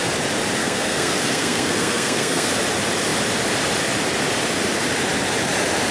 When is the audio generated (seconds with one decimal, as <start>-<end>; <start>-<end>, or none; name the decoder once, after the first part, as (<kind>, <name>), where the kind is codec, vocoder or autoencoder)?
0.6-2.5 (codec, SNAC)